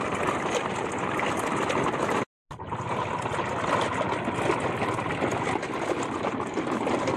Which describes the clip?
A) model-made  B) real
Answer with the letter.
B